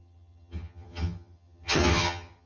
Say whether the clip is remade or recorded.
remade